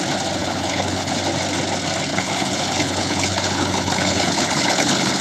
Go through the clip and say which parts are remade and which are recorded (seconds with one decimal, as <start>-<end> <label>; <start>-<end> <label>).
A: 0.0-0.4 recorded; 0.4-1.2 remade; 1.2-2.1 recorded; 2.1-5.2 remade